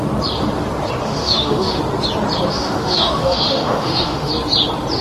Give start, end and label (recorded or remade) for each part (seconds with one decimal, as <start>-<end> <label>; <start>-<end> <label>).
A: 0.0-1.0 recorded; 1.0-1.8 remade; 1.8-2.5 recorded; 2.5-4.3 remade; 4.3-5.0 recorded